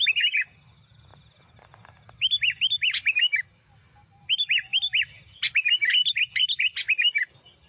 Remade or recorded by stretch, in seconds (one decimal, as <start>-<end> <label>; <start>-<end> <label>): 0.0-7.7 recorded